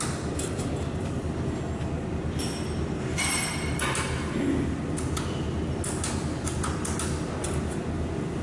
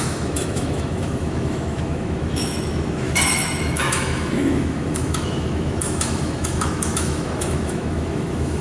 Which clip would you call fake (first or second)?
second